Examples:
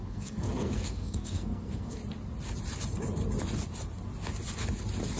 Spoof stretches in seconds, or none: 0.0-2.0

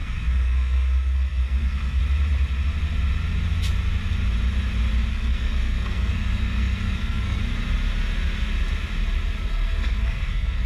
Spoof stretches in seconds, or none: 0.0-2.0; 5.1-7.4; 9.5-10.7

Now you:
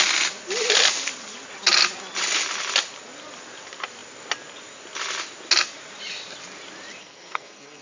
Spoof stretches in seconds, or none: 7.0-7.8